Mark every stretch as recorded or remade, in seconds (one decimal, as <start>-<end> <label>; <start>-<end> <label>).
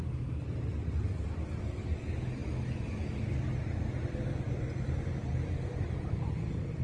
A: 0.0-6.8 recorded